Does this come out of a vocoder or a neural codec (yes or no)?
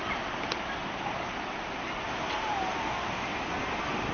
no